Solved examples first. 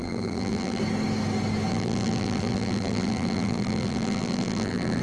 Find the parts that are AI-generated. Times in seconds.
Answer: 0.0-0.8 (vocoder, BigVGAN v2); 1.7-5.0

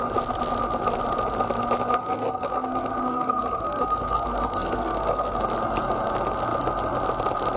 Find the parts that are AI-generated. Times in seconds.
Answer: 2.0-5.4 (codec, SNAC)

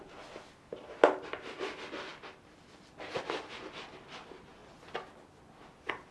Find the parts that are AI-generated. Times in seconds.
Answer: none

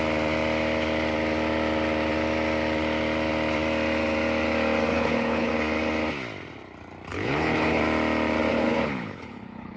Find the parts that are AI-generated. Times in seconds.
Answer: 4.9-5.5 (codec, HILCodec); 7.1-7.8; 8.5-9.8